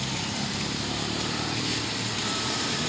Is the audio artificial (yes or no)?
yes